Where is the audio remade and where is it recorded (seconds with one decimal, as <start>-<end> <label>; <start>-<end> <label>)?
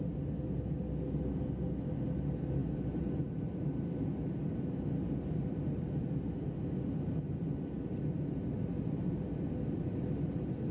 0.0-10.7 recorded